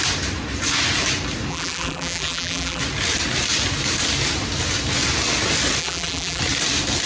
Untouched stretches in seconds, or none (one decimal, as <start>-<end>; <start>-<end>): 0.0-1.5; 2.8-5.8; 6.4-7.1

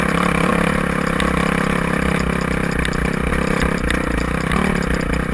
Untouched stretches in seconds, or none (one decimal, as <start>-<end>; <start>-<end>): 0.0-5.3

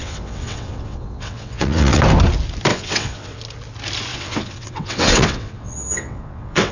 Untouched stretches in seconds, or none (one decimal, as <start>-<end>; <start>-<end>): 2.0-2.7; 3.4-4.1

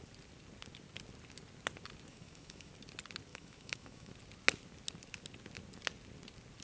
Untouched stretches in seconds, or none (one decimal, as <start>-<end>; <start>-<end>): 0.0-2.1; 2.7-3.3; 4.1-6.6

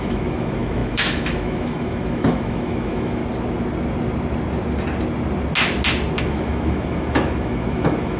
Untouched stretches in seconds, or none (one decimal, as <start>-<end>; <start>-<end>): 3.2-6.2

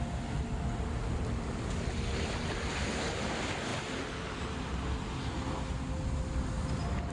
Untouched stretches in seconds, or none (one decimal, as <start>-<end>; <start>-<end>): 0.0-3.7; 4.7-7.1